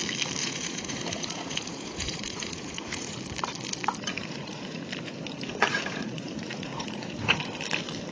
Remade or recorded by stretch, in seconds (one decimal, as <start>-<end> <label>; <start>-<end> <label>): 0.0-0.4 recorded; 0.4-3.2 remade; 3.2-4.1 recorded; 4.1-4.8 remade; 4.8-5.5 recorded; 5.5-7.4 remade; 7.4-8.1 recorded